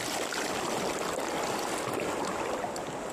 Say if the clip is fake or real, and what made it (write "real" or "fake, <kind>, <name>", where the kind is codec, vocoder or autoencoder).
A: real